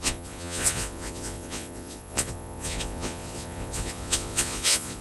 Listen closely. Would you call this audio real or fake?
fake